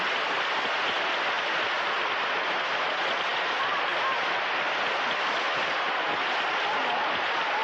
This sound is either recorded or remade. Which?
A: recorded